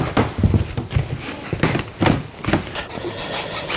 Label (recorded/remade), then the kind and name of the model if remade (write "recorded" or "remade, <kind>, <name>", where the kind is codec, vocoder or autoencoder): recorded